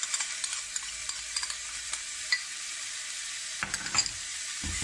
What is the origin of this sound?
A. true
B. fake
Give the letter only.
A